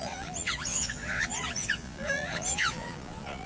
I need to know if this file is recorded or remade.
remade